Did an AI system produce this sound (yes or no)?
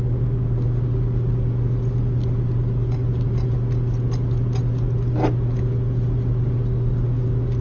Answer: no